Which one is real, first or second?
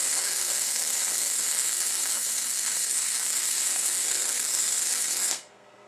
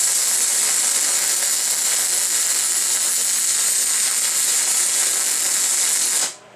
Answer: second